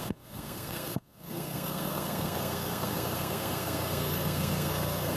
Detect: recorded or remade remade